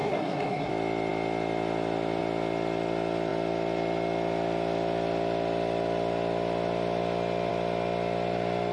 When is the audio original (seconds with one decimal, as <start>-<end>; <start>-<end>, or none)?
0.7-8.7